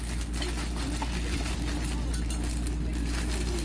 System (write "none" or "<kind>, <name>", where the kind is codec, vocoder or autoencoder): none